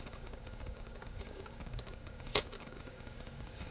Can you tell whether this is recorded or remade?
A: remade